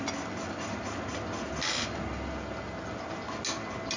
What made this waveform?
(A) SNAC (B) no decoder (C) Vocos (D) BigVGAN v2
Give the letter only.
B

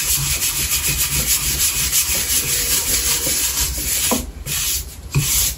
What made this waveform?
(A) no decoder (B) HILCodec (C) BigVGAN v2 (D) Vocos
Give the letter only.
C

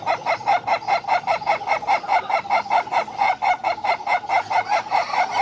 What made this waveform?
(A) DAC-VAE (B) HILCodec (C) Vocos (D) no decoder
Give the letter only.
D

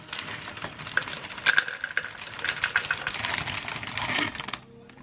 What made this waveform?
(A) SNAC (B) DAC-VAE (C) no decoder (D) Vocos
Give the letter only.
C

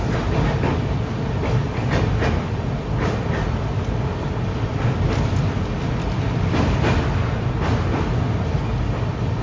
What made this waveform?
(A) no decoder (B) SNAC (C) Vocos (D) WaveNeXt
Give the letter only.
A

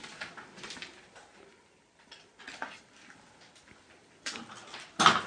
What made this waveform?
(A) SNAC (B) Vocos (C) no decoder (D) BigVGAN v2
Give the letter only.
C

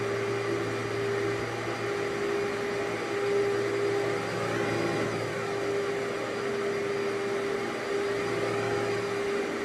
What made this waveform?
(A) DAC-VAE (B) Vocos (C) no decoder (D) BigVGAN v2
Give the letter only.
C